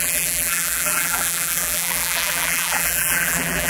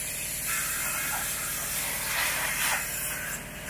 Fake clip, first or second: first